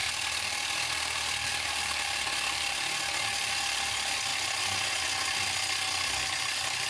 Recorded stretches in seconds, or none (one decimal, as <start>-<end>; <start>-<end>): 1.8-6.9